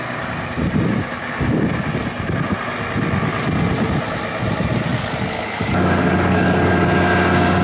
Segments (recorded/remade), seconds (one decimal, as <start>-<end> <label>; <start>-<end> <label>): 0.0-4.9 recorded; 4.9-6.7 remade; 6.7-7.6 recorded